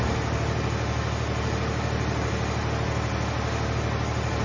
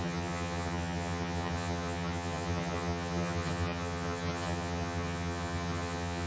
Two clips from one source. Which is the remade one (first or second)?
second